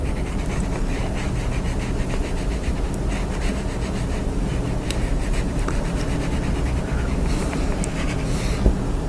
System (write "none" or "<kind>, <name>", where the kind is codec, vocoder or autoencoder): none